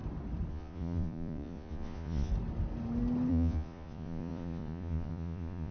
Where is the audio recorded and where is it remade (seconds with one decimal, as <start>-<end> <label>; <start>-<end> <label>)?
0.0-0.5 recorded; 0.5-2.3 remade; 2.3-3.3 recorded; 3.3-5.7 remade